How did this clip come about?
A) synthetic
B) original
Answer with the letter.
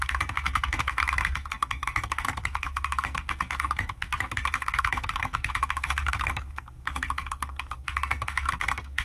A